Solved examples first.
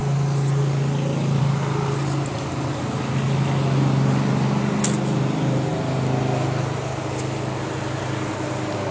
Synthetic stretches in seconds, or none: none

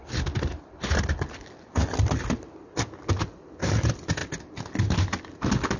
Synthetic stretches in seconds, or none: none

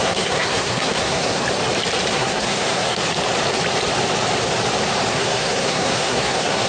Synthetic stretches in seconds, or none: 0.0-1.4 (codec, SNAC); 2.1-3.0; 5.1-6.7

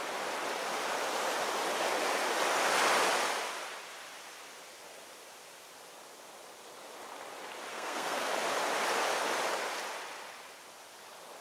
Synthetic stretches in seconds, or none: 7.7-8.3 (codec, SNAC)

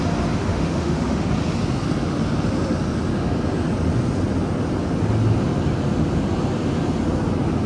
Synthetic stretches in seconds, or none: 0.5-1.3 (autoencoder, DAC-VAE)

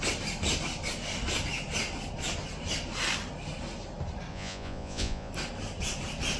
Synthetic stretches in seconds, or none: 4.3-5.3 (vocoder, Vocos)

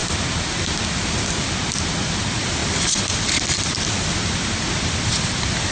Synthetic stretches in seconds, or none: none

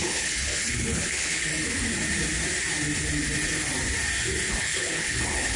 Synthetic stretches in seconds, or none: 0.0-1.5 (codec, HILCodec); 4.5-5.6